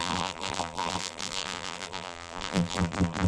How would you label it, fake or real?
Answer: fake